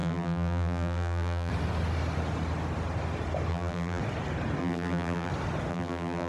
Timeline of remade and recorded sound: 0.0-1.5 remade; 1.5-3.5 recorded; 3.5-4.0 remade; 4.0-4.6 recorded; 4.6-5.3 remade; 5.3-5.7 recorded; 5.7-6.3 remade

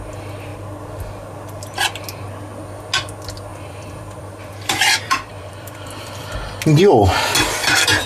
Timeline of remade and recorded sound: 0.0-3.5 recorded; 3.5-6.3 remade; 6.3-8.1 recorded

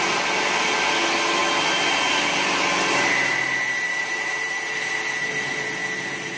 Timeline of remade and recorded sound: 0.0-4.0 recorded; 4.0-4.7 remade; 4.7-6.4 recorded

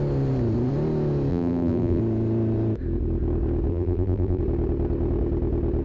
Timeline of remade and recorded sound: 0.0-1.3 recorded; 1.3-2.0 remade; 2.0-3.7 recorded; 3.7-4.4 remade; 4.4-5.8 recorded

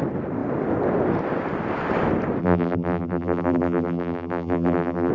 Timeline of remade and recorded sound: 0.0-2.4 recorded; 2.4-5.1 remade

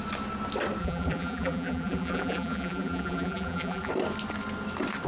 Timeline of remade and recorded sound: 0.0-0.8 recorded; 0.8-3.9 remade; 3.9-5.1 recorded